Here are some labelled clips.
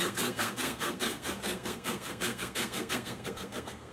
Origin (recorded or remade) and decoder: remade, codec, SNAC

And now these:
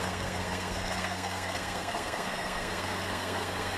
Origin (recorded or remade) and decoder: remade, codec, SNAC